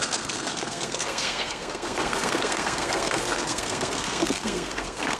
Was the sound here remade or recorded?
remade